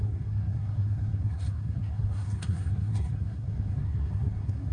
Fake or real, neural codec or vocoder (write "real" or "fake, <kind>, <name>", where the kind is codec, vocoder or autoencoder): fake, codec, SNAC